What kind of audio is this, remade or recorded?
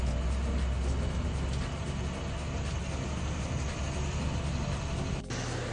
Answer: recorded